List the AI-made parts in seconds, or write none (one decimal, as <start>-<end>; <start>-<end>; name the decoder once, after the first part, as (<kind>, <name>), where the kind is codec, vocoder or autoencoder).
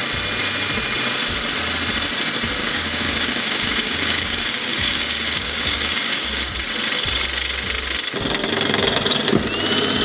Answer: 2.6-6.5 (codec, DAC)